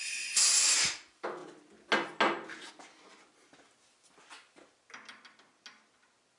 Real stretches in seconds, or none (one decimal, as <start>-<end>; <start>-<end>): 0.0-6.4